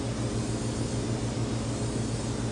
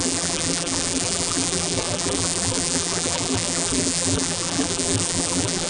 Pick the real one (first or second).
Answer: first